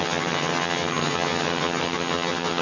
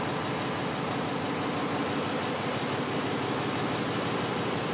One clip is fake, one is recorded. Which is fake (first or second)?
first